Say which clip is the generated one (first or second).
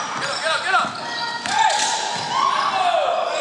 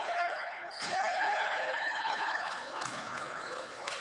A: second